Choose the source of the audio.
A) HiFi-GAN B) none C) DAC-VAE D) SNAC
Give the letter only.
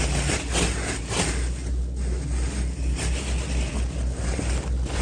B